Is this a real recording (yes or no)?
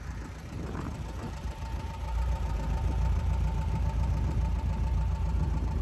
no